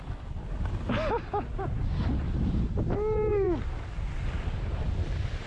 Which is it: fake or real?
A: real